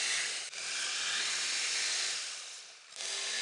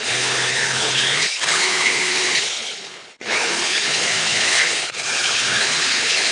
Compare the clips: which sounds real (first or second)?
first